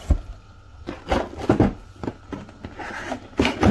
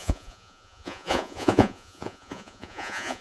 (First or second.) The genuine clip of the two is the first